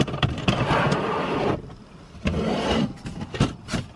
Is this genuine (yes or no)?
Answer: no